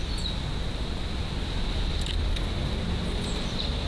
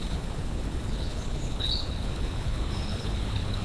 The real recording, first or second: first